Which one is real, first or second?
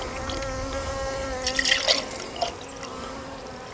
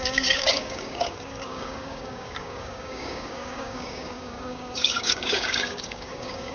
first